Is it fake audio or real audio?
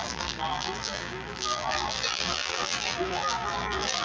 fake